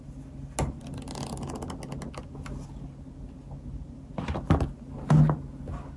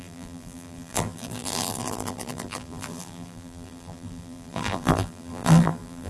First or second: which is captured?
first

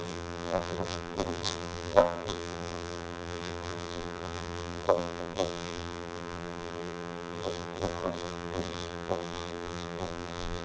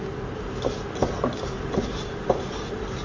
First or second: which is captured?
second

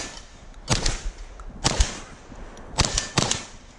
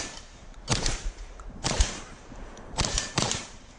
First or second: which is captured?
first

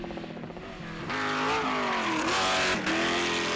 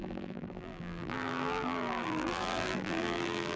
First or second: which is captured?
first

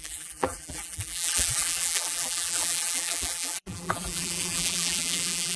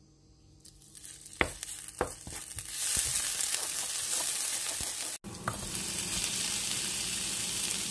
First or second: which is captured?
second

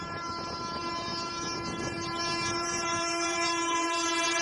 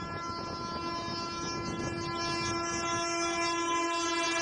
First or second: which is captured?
second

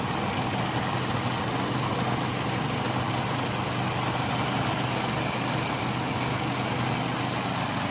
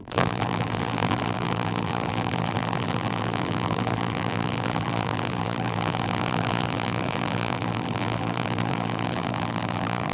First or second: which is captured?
first